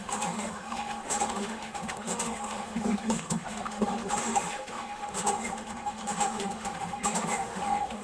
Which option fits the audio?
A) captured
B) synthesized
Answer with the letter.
B